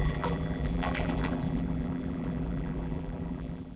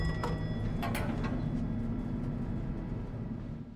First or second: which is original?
second